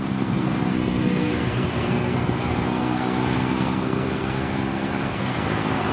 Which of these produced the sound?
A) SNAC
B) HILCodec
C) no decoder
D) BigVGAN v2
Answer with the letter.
A